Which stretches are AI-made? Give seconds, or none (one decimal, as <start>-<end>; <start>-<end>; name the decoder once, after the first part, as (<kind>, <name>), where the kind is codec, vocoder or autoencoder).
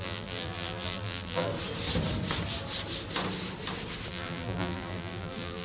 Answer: 0.0-1.5 (vocoder, BigVGAN v2); 4.1-5.6